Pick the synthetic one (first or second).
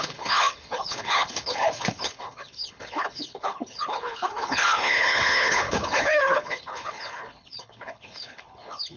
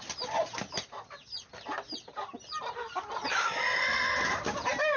first